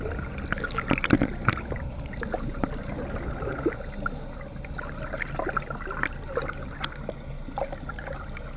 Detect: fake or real real